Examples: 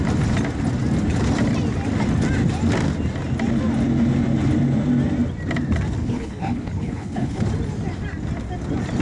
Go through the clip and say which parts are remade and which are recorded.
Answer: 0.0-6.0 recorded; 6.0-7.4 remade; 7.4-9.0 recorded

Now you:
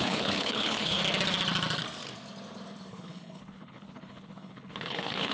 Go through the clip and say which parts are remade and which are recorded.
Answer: 0.0-1.0 remade; 1.0-2.9 recorded; 2.9-5.3 remade